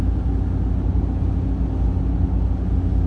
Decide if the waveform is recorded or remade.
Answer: recorded